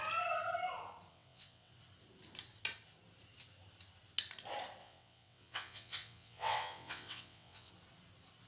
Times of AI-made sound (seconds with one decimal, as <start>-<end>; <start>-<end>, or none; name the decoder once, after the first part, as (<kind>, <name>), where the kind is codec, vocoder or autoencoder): 1.1-1.7 (vocoder, WaveNeXt); 4.8-7.7